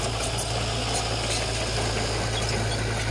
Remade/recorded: recorded